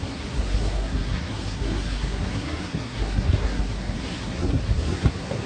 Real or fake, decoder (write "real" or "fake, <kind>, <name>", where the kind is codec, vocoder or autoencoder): fake, codec, SNAC